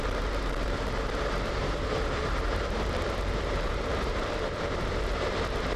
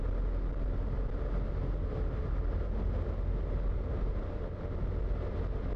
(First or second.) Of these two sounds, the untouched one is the second